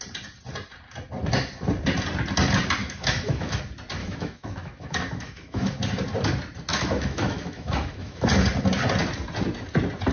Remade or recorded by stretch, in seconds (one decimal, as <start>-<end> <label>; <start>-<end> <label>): 0.0-2.8 recorded; 2.8-3.6 remade; 3.6-4.0 recorded; 4.0-5.8 remade; 5.8-6.7 recorded; 6.7-8.3 remade; 8.3-10.1 recorded